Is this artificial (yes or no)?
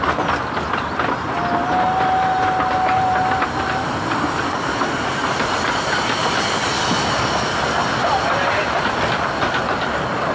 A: no